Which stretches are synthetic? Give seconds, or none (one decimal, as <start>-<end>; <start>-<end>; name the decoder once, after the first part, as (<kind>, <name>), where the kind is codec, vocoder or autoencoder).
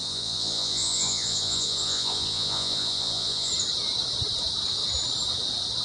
0.0-3.5 (vocoder, Vocos)